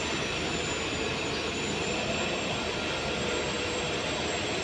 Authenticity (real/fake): fake